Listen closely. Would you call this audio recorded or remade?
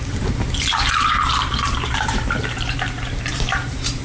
remade